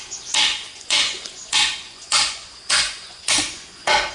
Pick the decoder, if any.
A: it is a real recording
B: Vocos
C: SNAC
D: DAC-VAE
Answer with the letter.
B